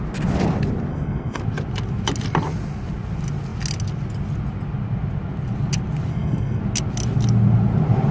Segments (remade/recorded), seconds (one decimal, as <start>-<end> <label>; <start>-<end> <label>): 0.0-0.9 recorded; 0.9-1.4 remade; 1.4-6.1 recorded; 6.1-6.6 remade; 6.6-8.1 recorded